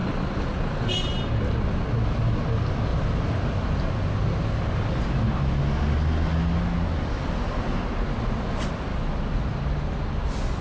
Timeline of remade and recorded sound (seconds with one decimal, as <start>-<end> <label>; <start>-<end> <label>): 0.0-1.0 remade; 1.0-10.6 recorded